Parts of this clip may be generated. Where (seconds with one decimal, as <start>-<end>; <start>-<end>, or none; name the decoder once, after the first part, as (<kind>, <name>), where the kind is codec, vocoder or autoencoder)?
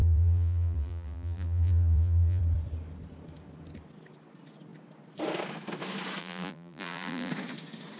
0.0-2.4 (vocoder, BigVGAN v2); 6.2-7.3